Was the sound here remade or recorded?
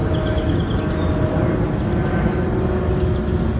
recorded